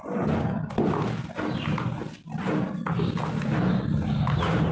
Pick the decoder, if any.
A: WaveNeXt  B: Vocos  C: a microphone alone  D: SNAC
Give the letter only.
C